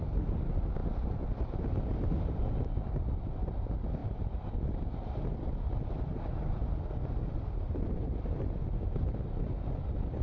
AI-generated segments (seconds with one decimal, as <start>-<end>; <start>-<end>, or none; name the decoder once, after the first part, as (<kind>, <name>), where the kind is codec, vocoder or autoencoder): 4.0-4.8 (vocoder, BigVGAN v2); 6.6-8.2